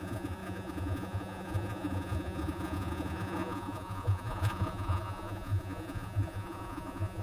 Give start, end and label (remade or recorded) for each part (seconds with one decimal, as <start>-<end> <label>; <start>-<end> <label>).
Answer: 0.0-7.2 remade